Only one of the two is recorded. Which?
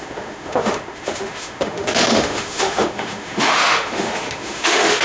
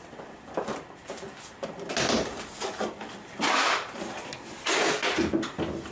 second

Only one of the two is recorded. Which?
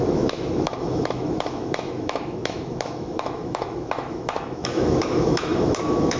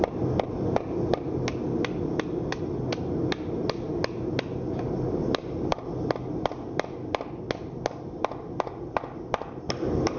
second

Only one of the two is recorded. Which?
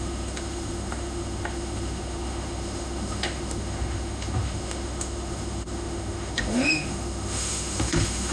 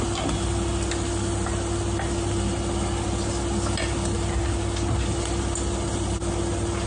second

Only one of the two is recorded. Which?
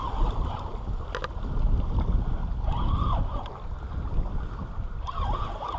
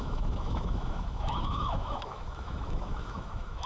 first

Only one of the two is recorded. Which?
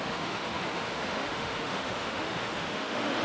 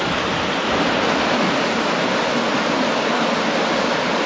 second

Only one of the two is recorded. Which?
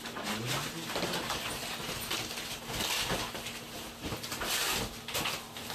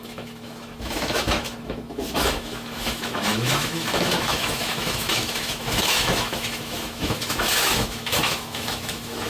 first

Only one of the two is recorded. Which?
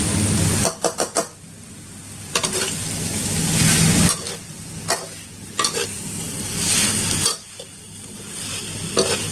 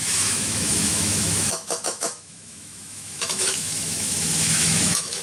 first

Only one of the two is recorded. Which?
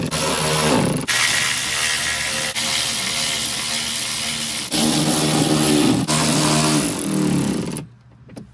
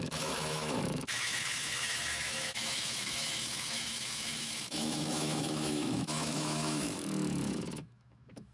first